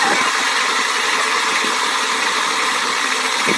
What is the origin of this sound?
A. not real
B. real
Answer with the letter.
B